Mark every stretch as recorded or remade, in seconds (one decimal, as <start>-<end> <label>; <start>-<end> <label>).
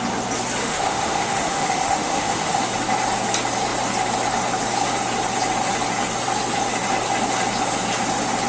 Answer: 0.0-0.6 recorded; 0.6-2.6 remade; 2.6-8.5 recorded